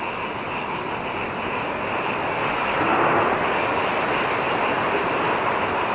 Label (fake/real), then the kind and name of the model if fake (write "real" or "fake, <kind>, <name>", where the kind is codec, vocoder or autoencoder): real